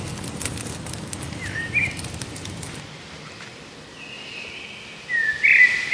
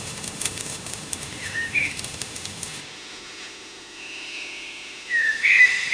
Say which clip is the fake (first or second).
second